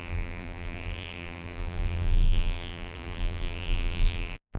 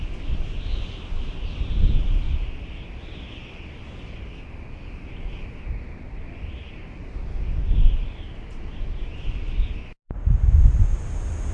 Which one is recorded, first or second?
second